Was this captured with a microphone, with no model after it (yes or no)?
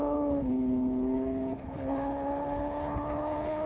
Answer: no